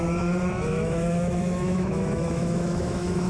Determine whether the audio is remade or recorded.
remade